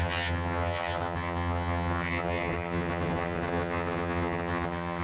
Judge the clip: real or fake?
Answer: fake